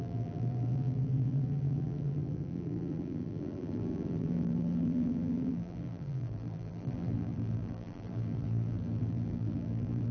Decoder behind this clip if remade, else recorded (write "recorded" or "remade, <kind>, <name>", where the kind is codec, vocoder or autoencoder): remade, vocoder, BigVGAN v2